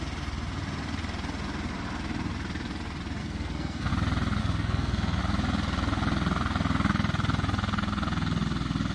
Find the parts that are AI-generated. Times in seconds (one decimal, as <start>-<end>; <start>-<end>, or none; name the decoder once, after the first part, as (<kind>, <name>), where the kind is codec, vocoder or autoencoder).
3.2-3.9 (codec, SNAC); 4.4-5.2